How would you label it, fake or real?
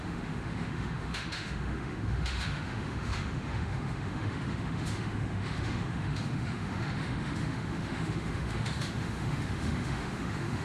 fake